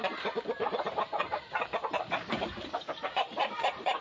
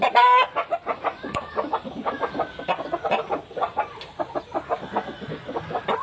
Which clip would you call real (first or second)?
second